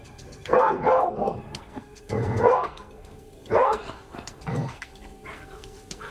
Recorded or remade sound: remade